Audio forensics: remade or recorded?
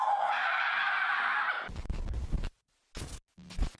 recorded